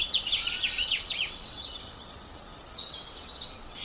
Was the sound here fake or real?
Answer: fake